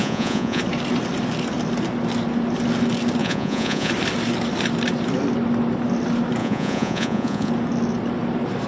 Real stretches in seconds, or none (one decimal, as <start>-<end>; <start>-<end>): 0.6-3.2; 3.9-6.4; 7.5-8.7